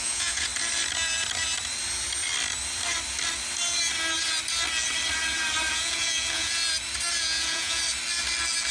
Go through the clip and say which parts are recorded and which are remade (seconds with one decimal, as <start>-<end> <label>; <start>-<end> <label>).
0.0-0.5 remade; 0.5-5.7 recorded; 5.7-6.6 remade; 6.6-7.2 recorded; 7.2-7.8 remade; 7.8-8.7 recorded